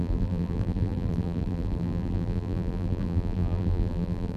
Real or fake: fake